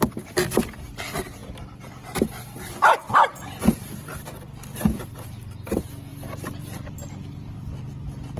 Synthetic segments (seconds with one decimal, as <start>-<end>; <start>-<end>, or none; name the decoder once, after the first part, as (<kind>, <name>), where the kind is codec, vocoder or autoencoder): 0.0-8.4 (vocoder, BigVGAN v2)

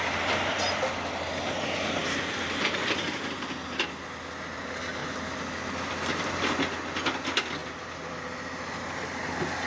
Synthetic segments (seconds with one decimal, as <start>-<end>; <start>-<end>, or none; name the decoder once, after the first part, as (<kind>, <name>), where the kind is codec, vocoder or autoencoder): none

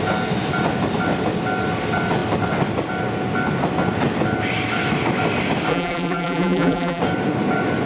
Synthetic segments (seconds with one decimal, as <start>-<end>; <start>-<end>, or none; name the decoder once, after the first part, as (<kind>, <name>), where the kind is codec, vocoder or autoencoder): 5.7-7.0 (vocoder, BigVGAN v2)